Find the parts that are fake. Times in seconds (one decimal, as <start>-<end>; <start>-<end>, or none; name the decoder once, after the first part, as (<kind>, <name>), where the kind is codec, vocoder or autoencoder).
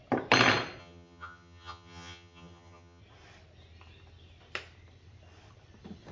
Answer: 0.8-3.0 (vocoder, HiFi-GAN)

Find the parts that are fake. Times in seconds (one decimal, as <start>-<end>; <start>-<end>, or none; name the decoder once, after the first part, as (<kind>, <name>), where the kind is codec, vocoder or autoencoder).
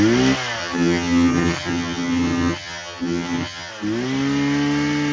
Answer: 0.6-3.7 (vocoder, HiFi-GAN)